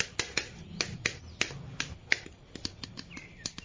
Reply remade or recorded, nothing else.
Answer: recorded